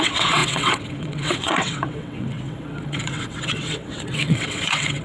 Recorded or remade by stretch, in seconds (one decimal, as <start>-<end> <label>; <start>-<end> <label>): 0.0-5.0 remade